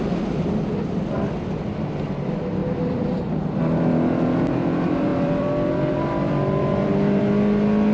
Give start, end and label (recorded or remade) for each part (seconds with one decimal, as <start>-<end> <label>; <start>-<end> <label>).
0.0-2.6 recorded; 2.6-3.5 remade; 3.5-5.1 recorded; 5.1-6.9 remade; 6.9-7.9 recorded